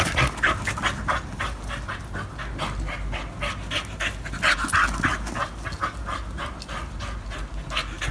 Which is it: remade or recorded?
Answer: recorded